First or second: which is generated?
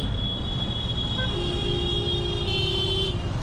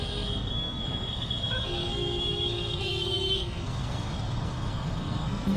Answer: second